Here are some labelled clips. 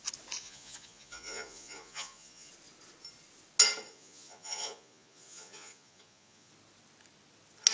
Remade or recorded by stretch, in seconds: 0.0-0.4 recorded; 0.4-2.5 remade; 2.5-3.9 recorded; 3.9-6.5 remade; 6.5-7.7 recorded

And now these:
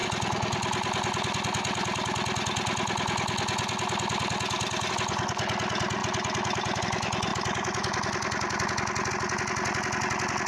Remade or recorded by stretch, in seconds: 0.0-10.5 recorded

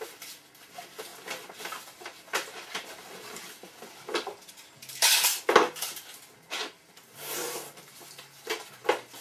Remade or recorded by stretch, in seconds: 0.0-9.2 recorded

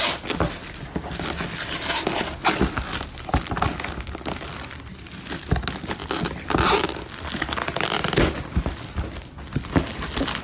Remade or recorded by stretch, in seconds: 0.0-10.4 recorded

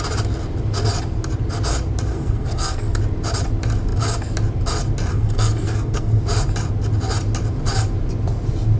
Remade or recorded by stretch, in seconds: 0.0-2.1 recorded; 2.1-3.0 remade; 3.0-5.1 recorded; 5.1-6.2 remade; 6.2-8.8 recorded

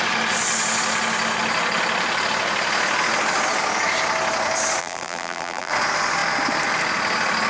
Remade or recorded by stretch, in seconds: 0.0-4.8 recorded; 4.8-5.7 remade; 5.7-7.5 recorded

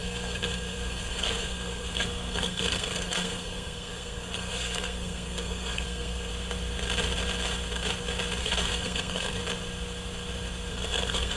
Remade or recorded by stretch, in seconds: 0.0-6.3 remade; 6.3-8.4 recorded; 8.4-9.4 remade; 9.4-10.7 recorded; 10.7-11.4 remade

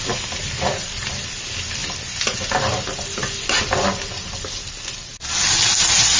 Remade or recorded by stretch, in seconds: 0.0-6.2 recorded